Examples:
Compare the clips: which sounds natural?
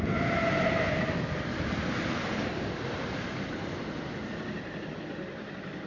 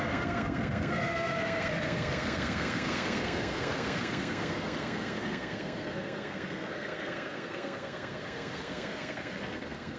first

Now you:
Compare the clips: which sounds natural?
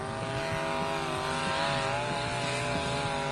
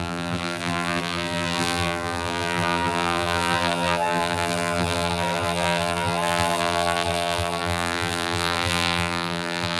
first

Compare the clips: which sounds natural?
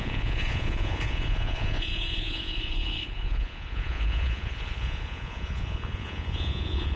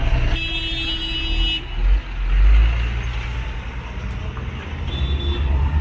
second